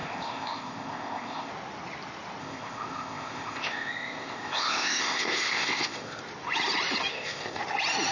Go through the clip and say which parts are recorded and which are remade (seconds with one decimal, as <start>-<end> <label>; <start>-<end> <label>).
0.0-1.5 remade; 1.5-2.4 recorded; 2.4-6.2 remade; 6.2-7.1 recorded; 7.1-7.6 remade; 7.6-8.1 recorded